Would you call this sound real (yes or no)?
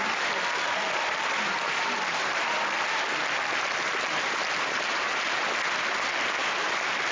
yes